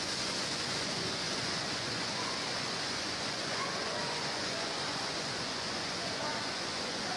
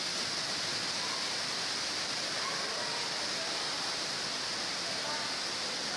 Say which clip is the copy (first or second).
first